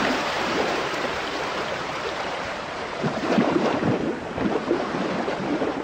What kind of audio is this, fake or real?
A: fake